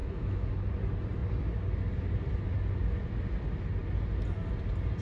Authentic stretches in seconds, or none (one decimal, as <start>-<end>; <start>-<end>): 0.5-5.0